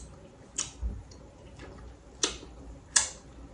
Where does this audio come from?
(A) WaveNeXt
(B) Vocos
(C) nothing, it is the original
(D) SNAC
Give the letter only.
C